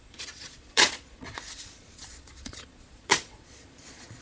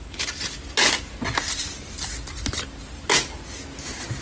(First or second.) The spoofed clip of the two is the first